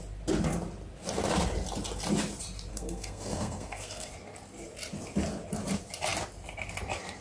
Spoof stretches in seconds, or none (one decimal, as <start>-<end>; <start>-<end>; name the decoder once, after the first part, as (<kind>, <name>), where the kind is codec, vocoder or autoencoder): 2.7-4.1 (codec, SNAC)